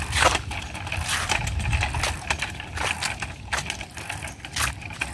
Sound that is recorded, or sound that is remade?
recorded